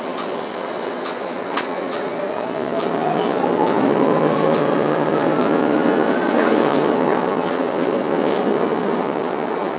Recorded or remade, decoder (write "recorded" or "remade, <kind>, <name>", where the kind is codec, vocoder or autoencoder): remade, vocoder, Vocos